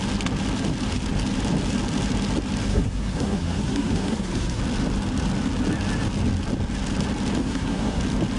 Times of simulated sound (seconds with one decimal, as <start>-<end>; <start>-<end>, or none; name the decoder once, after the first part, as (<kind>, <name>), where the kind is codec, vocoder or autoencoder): 2.7-4.6 (codec, SNAC); 7.4-8.0